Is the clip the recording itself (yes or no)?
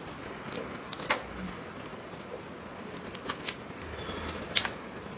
yes